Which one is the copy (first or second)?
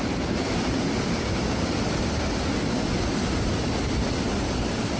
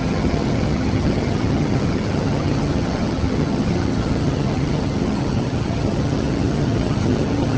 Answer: second